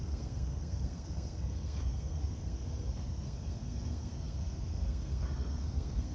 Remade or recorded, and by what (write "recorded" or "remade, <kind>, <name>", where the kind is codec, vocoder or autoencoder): remade, codec, SNAC